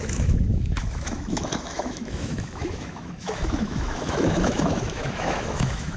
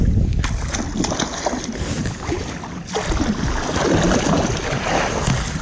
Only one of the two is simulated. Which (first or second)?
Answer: first